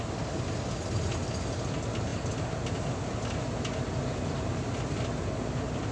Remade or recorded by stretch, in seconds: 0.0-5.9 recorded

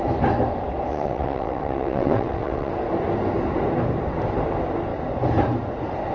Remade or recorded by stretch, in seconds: 0.0-0.9 recorded; 0.9-2.7 remade; 2.7-6.1 recorded

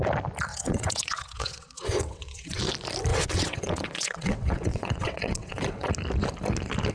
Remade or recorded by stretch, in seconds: 0.0-0.5 recorded; 0.5-2.6 remade; 2.6-3.1 recorded; 3.1-5.9 remade; 5.9-6.9 recorded

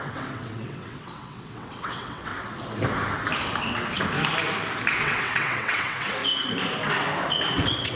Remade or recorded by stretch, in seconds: 0.0-2.3 remade; 2.3-5.0 recorded; 5.0-6.2 remade; 6.2-7.5 recorded; 7.5-8.0 remade

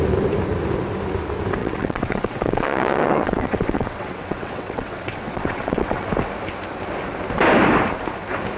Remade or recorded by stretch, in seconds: 0.0-1.6 recorded; 1.6-6.1 remade; 6.1-8.6 recorded